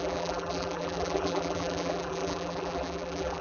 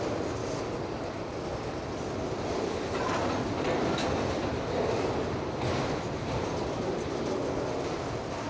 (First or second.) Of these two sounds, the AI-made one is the first